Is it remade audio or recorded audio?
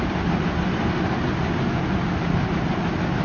recorded